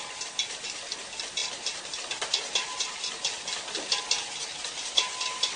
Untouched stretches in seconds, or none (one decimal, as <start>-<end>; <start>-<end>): 0.0-5.6